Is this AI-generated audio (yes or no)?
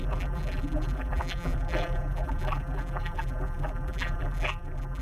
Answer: yes